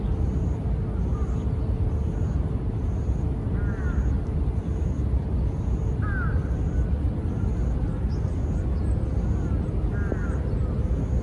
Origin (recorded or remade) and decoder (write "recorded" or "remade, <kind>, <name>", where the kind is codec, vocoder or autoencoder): recorded